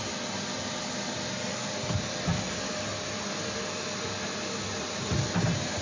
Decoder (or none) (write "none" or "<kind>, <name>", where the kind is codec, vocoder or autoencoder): none